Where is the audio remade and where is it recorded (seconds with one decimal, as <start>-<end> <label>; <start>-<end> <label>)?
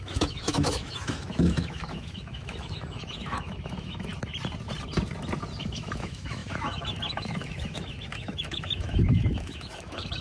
0.0-4.1 remade; 4.1-5.6 recorded; 5.6-10.2 remade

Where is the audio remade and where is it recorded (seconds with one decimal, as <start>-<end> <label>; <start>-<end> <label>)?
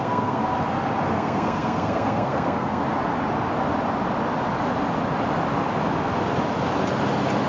0.0-0.4 remade; 0.4-1.1 recorded; 1.1-2.8 remade; 2.8-7.5 recorded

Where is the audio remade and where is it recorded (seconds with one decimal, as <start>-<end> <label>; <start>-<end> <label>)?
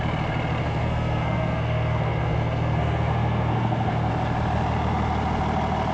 0.0-0.6 recorded; 0.6-4.1 remade; 4.1-5.9 recorded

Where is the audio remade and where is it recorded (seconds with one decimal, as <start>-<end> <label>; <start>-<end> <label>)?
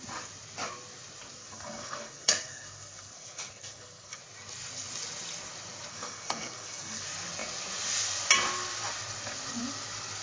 0.0-1.4 recorded; 1.4-4.2 remade; 4.2-5.9 recorded; 5.9-7.0 remade; 7.0-10.2 recorded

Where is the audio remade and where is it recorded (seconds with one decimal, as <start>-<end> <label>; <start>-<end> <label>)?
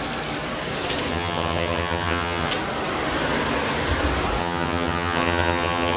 0.0-1.1 recorded; 1.1-2.5 remade; 2.5-4.4 recorded; 4.4-6.0 remade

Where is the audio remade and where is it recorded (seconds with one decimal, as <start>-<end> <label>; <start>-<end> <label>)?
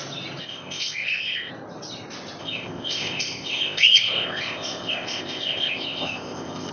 0.0-0.4 recorded; 0.4-1.5 remade; 1.5-2.4 recorded; 2.4-6.7 remade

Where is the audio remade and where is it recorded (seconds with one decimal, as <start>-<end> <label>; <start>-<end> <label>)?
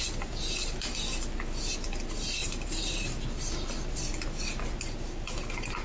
0.0-2.4 recorded; 2.4-3.2 remade; 3.2-5.8 recorded